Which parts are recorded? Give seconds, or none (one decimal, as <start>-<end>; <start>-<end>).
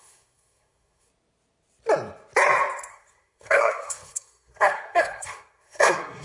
1.1-2.9